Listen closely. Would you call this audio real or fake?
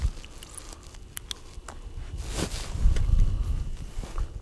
real